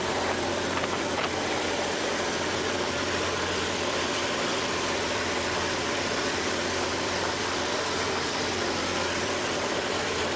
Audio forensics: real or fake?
fake